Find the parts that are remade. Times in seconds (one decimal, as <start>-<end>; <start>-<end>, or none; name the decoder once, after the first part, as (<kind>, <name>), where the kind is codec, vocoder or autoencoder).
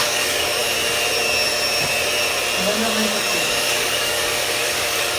0.0-0.6 (codec, DAC); 3.1-5.2